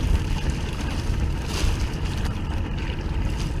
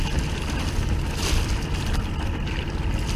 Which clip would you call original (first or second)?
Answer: second